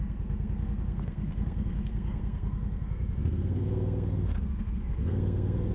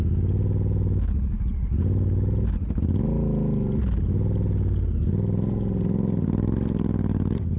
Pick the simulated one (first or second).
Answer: first